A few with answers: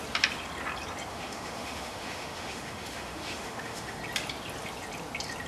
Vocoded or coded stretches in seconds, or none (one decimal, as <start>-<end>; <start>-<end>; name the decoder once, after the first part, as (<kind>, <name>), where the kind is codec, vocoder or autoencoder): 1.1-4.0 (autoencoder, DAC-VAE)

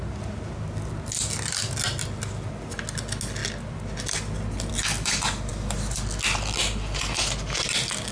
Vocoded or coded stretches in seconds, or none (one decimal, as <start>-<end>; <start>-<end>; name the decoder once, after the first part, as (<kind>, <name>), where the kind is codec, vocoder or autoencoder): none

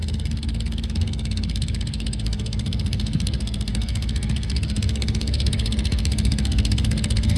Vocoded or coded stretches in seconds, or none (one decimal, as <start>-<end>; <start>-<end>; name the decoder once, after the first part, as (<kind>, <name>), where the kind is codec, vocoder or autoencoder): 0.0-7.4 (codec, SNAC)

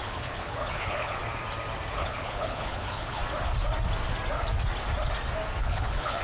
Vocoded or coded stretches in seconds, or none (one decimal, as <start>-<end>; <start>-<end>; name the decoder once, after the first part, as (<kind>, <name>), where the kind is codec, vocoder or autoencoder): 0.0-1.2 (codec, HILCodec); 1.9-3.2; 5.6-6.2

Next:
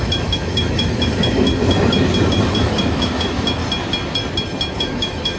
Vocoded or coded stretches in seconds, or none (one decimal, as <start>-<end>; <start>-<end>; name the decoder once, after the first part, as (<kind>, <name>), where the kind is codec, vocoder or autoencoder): 0.0-1.6 (autoencoder, DAC-VAE); 2.3-3.6; 4.7-5.4

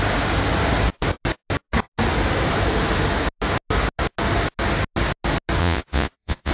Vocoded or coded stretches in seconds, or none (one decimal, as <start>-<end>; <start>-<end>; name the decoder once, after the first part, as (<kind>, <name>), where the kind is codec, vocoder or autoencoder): 5.6-6.5 (vocoder, Vocos)